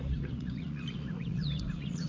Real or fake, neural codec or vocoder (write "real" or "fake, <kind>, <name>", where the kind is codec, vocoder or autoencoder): fake, vocoder, Vocos